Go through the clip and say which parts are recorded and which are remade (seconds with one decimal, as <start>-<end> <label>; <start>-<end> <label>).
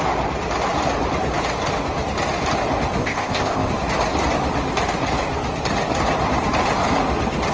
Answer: 0.0-3.0 recorded; 3.0-3.7 remade; 3.7-7.5 recorded